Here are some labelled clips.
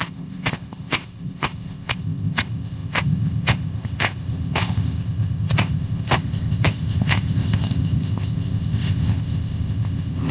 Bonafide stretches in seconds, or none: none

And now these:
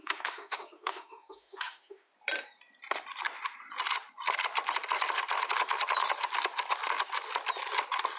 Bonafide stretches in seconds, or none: 2.1-8.2

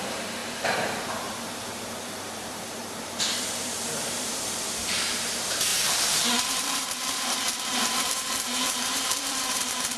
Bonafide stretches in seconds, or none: none

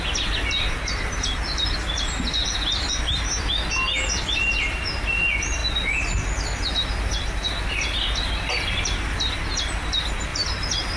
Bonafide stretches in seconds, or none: 0.0-2.4; 3.3-10.3

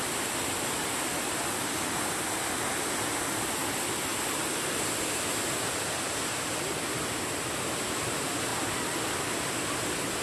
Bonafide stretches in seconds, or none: 0.0-10.2

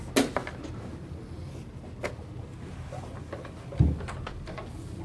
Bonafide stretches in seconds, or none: 0.0-5.0

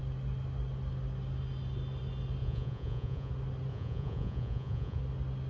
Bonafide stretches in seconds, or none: 0.0-2.4; 3.3-3.7; 5.0-5.5